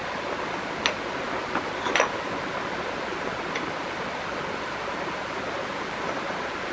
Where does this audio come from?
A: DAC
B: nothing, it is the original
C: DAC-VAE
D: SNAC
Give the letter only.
B